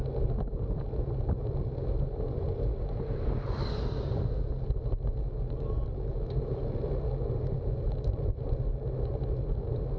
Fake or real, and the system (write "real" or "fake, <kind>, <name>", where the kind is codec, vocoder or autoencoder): real